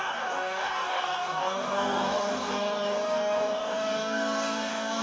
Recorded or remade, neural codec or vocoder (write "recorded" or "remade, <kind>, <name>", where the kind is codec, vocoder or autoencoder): remade, codec, DAC